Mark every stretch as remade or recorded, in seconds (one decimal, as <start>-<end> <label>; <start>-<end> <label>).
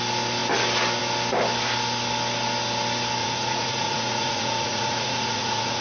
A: 0.0-3.2 recorded; 3.2-5.8 remade